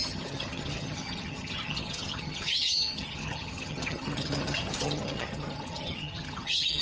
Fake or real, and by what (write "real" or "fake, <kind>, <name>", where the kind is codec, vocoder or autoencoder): fake, vocoder, HiFi-GAN